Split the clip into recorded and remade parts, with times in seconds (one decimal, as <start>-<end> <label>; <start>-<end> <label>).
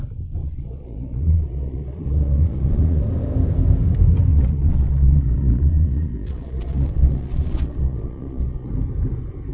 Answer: 0.0-0.4 recorded; 0.4-3.0 remade; 3.0-4.3 recorded; 4.3-8.7 remade; 8.7-9.5 recorded